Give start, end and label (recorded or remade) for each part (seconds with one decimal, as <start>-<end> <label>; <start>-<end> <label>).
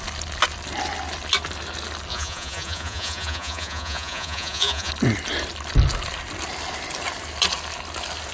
0.0-2.1 recorded; 2.1-4.9 remade; 4.9-8.3 recorded